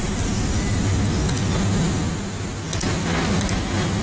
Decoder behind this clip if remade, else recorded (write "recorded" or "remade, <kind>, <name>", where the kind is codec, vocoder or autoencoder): recorded